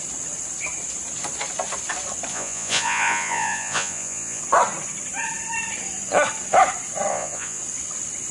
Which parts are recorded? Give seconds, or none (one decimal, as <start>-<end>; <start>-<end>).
0.0-2.3; 4.4-7.1; 7.6-8.3